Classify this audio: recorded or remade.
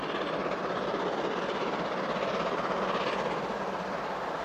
recorded